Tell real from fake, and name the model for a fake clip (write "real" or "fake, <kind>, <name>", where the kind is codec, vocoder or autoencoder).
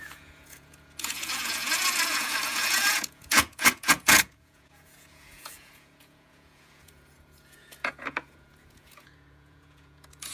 fake, vocoder, Vocos